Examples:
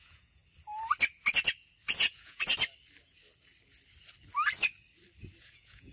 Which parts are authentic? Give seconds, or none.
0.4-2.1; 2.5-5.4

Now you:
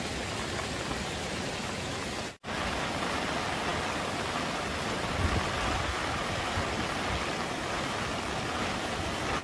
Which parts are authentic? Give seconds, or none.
0.0-9.4

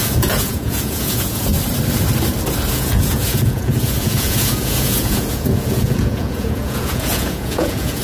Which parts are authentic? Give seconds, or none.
1.5-2.7

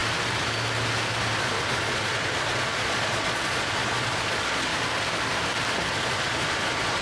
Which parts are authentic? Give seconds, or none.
0.0-1.4; 4.7-5.9